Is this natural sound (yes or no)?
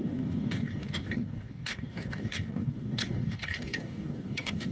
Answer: no